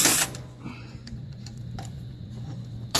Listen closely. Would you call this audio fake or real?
fake